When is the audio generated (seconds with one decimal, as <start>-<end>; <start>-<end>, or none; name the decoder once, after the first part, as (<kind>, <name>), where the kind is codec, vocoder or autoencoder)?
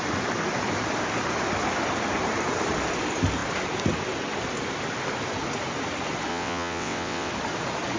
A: 6.3-7.3 (vocoder, WaveNeXt)